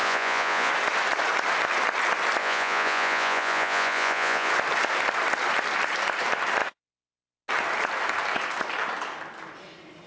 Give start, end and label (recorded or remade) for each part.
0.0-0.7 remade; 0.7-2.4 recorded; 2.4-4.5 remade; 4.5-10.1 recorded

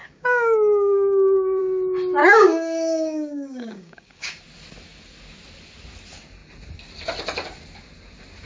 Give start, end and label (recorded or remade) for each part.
0.0-1.6 remade; 1.6-2.2 recorded; 2.2-4.4 remade; 4.4-8.5 recorded